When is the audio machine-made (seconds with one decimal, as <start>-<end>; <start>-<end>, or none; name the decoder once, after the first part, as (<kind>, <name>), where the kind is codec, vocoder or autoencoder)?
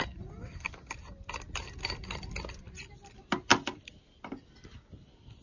none